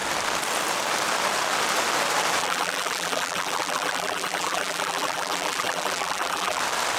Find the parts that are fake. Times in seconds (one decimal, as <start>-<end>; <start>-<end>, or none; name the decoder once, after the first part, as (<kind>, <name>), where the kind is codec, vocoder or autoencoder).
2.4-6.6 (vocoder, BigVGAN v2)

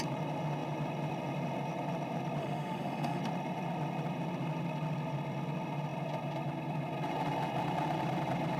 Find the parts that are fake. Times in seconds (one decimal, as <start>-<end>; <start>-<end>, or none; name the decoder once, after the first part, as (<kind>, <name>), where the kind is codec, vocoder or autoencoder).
2.4-3.2 (autoencoder, DAC-VAE)

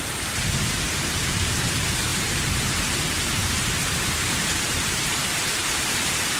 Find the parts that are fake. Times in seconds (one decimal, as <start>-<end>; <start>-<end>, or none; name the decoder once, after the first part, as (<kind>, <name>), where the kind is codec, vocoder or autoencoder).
0.0-6.4 (vocoder, BigVGAN v2)

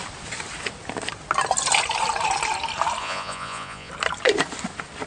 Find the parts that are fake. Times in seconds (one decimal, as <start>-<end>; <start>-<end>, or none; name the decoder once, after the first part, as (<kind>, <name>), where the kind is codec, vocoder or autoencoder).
3.0-3.9 (vocoder, Vocos)

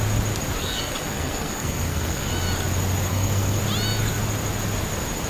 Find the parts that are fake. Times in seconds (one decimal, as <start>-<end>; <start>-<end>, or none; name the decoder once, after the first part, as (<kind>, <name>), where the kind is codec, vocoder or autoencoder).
0.6-2.3 (codec, SNAC); 3.1-3.6